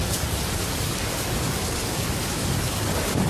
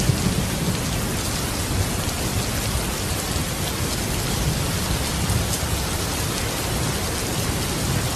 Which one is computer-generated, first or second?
first